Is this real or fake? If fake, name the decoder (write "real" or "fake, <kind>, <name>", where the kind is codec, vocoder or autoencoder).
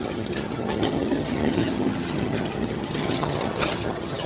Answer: fake, vocoder, HiFi-GAN